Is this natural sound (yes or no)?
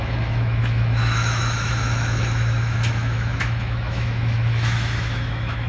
no